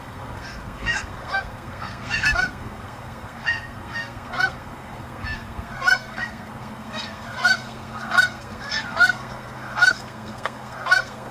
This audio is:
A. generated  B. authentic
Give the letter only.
A